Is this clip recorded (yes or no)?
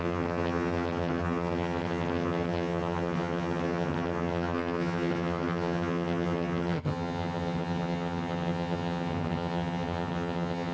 no